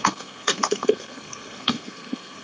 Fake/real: fake